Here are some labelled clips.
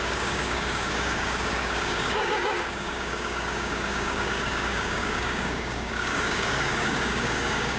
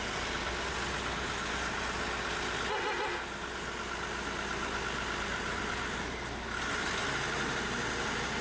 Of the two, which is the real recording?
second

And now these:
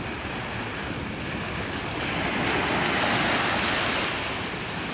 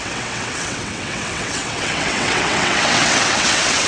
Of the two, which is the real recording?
first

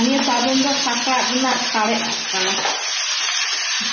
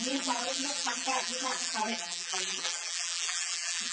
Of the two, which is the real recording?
first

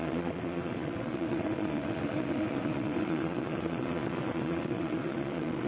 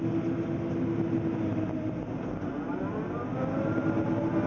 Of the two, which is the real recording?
second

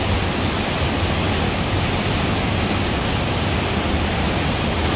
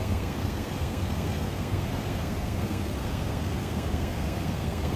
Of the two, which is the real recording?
first